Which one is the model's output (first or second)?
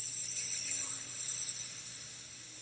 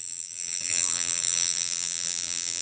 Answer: second